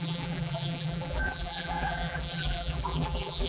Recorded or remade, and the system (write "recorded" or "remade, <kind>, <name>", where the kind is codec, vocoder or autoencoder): remade, vocoder, BigVGAN v2